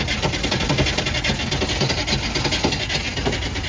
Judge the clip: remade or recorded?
recorded